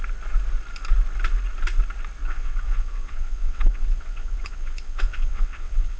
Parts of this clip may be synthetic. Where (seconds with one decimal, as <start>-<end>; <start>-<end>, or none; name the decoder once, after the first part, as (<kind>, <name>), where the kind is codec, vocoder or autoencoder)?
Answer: 2.2-6.0 (vocoder, WaveNeXt)